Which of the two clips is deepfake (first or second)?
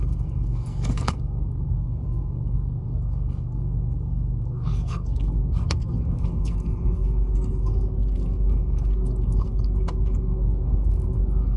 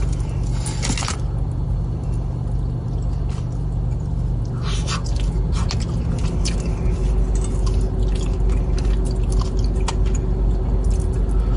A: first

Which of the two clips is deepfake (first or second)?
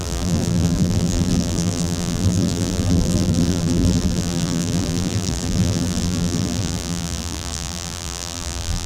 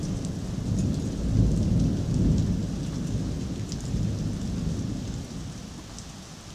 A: first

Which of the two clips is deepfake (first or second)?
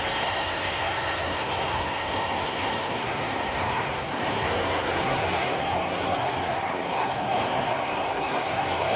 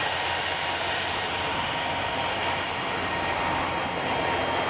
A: first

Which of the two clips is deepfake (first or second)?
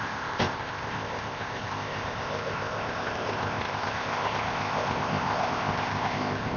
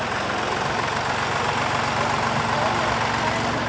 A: first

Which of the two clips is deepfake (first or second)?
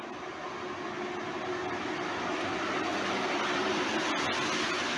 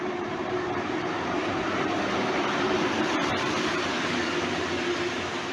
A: second